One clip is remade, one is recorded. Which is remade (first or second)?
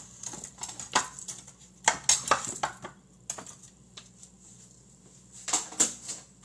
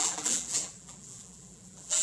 second